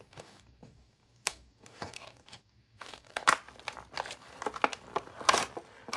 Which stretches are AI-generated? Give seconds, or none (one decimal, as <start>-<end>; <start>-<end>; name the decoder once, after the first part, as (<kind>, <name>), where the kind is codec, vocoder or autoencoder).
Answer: 0.0-3.2 (codec, DAC)

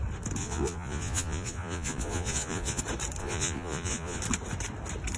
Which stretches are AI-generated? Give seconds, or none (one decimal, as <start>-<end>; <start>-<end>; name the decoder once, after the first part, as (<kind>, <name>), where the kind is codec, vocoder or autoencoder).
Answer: 0.4-2.8 (vocoder, Vocos); 3.2-4.2